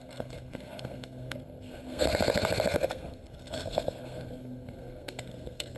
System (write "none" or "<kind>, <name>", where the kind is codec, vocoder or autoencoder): codec, SNAC